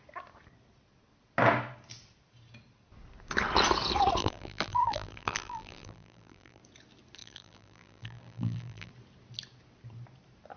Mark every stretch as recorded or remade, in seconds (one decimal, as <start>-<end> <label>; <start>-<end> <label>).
0.0-4.2 recorded; 4.2-6.6 remade; 6.6-7.2 recorded; 7.2-8.9 remade; 8.9-10.6 recorded